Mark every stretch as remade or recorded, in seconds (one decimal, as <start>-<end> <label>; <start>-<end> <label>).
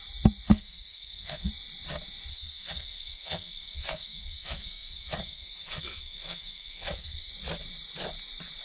0.0-0.5 recorded; 0.5-1.5 remade; 1.5-2.3 recorded; 2.3-7.3 remade; 7.3-8.6 recorded